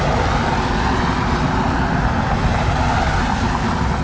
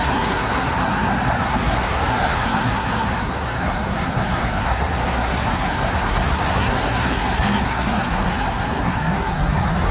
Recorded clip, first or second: first